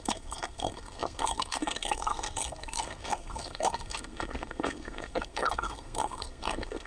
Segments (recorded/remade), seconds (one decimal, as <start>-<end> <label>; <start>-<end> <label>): 0.0-6.9 remade